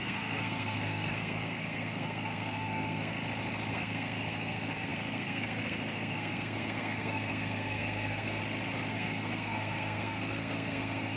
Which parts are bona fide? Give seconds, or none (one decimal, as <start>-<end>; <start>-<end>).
3.1-3.7; 8.4-8.9